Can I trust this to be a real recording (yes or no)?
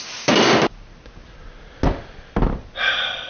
yes